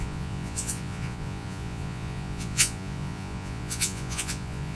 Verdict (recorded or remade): remade